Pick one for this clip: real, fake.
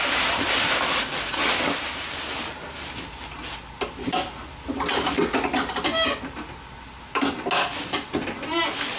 real